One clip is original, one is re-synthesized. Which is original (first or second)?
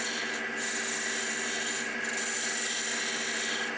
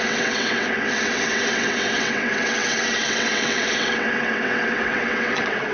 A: first